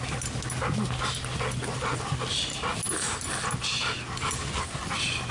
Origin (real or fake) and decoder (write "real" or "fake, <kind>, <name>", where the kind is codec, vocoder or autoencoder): real